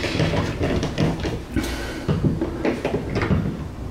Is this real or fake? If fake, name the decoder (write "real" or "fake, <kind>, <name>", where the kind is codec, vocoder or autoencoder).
real